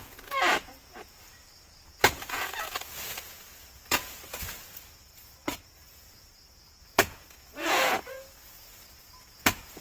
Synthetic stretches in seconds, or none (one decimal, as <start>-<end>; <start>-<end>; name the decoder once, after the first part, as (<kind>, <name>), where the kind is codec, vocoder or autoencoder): 0.0-9.8 (vocoder, Vocos)